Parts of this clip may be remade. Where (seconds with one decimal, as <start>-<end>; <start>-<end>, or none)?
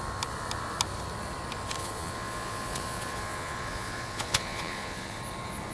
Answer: 1.8-5.2